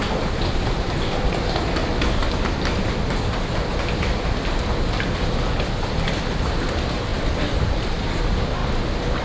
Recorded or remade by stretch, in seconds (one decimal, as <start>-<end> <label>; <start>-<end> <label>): 0.0-1.8 remade; 1.8-6.4 recorded; 6.4-7.1 remade; 7.1-7.6 recorded; 7.6-8.6 remade; 8.6-9.2 recorded

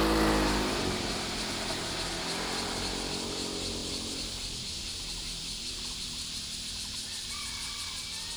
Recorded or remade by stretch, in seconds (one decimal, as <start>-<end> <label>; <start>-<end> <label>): 0.0-3.8 recorded; 3.8-6.7 remade; 6.7-8.4 recorded

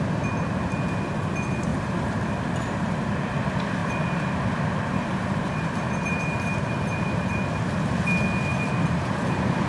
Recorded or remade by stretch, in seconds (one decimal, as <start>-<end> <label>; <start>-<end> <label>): 0.0-1.7 recorded; 1.7-3.1 remade; 3.1-3.8 recorded; 3.8-7.7 remade; 7.7-8.5 recorded; 8.5-9.7 remade

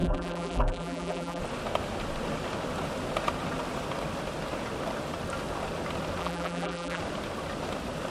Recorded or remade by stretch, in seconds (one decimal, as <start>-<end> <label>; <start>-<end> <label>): 0.0-1.4 remade; 1.4-6.2 recorded; 6.2-7.0 remade; 7.0-8.1 recorded

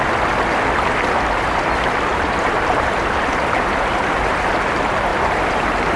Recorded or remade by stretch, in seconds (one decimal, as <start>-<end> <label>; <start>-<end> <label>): 0.0-2.1 recorded; 2.1-2.9 remade; 2.9-5.1 recorded; 5.1-6.0 remade

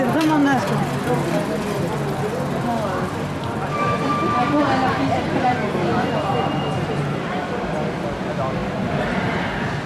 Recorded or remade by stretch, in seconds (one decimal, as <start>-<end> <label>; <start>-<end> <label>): 0.0-9.9 recorded